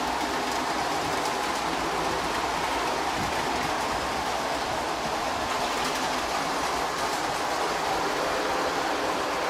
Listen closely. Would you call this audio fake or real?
real